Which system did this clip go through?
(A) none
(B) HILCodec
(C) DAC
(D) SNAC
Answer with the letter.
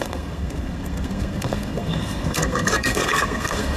D